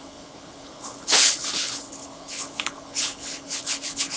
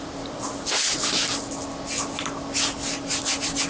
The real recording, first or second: second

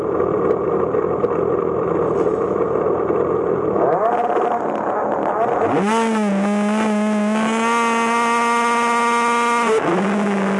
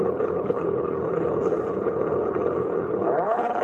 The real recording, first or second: first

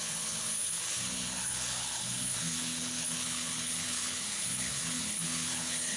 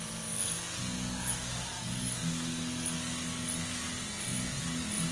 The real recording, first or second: second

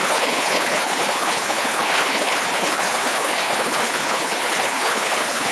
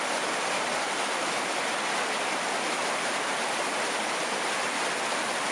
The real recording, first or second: second